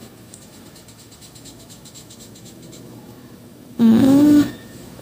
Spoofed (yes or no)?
yes